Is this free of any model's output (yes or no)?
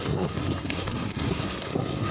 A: no